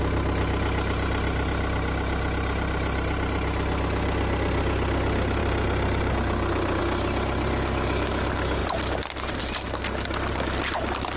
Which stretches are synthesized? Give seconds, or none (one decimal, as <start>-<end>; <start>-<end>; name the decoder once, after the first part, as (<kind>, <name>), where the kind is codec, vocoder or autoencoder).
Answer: 8.6-9.4 (vocoder, BigVGAN v2)